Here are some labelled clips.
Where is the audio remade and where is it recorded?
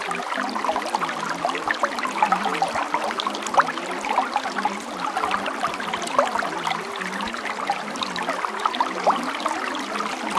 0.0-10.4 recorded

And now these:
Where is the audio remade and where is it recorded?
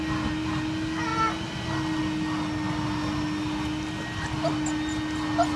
0.0-5.6 recorded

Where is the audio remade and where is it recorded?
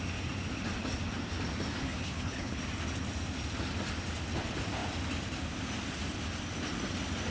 0.0-1.8 recorded; 1.8-2.6 remade; 2.6-7.3 recorded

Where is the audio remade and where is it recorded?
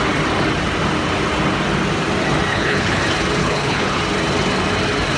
0.0-2.5 recorded; 2.5-3.0 remade; 3.0-3.4 recorded; 3.4-4.0 remade; 4.0-5.2 recorded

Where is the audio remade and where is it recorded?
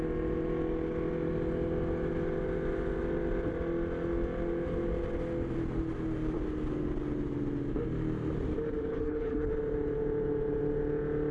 0.0-8.9 recorded; 8.9-9.5 remade; 9.5-11.3 recorded